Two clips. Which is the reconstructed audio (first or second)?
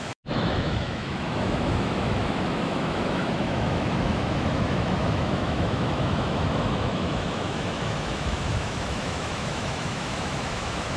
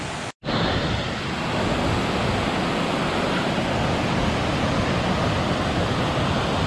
first